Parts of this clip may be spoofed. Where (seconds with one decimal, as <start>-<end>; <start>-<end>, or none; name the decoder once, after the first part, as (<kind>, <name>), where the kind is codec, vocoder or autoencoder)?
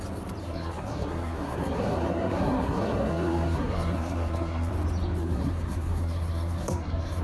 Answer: 0.4-4.7 (codec, SNAC); 5.2-7.2